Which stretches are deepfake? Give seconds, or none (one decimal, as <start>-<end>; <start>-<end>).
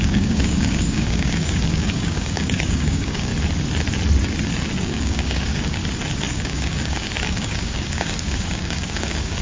0.0-3.3; 4.8-5.8; 6.3-9.4